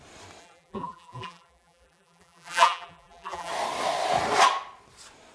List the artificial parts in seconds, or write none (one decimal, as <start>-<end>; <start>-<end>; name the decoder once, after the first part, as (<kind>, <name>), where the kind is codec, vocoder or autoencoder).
0.4-3.5 (vocoder, BigVGAN v2)